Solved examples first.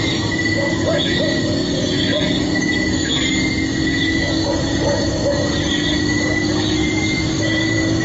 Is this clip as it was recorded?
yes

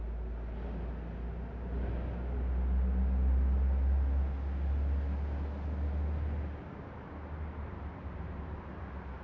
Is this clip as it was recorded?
yes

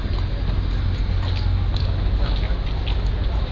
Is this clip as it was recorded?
yes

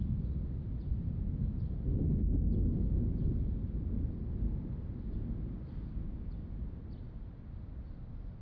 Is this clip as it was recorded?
yes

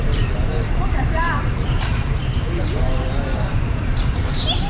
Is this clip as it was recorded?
no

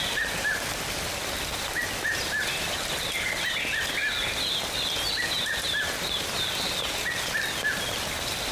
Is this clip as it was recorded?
yes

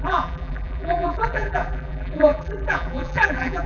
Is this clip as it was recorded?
no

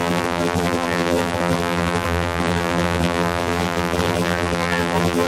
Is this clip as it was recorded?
no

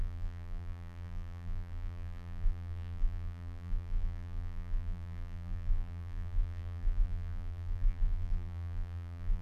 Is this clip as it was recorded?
no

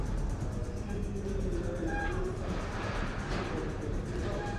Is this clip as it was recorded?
no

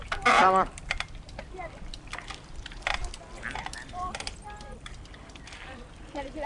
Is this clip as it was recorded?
no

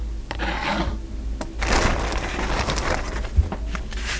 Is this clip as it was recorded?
yes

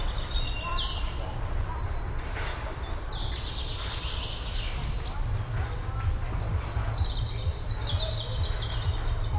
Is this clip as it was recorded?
yes